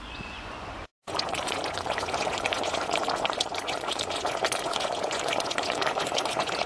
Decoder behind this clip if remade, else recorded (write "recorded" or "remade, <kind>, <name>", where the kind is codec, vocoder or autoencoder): remade, vocoder, Vocos